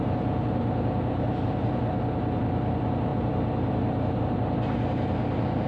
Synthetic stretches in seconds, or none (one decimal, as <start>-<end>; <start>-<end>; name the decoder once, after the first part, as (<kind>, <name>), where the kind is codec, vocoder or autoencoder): none

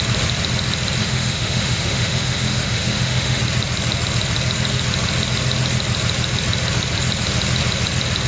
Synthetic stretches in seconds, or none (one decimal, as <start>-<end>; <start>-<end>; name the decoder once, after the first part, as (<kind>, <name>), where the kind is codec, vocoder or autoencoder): 1.0-3.4 (autoencoder, DAC-VAE)

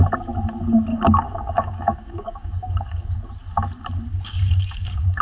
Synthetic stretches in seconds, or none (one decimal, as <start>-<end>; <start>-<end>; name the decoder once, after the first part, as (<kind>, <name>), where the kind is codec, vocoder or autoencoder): 0.9-3.0 (codec, DAC); 4.1-5.2